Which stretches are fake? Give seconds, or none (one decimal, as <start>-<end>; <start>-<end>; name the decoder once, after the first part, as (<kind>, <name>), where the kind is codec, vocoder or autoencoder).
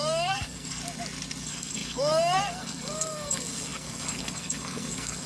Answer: 0.0-0.8 (codec, SNAC); 1.4-5.3